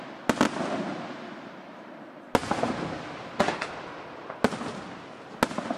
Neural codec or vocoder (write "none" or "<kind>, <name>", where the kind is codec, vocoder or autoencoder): none